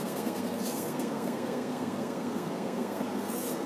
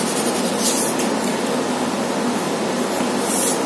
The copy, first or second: first